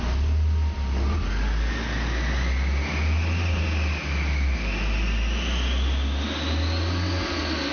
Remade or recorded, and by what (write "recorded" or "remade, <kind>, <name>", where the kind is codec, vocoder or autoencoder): recorded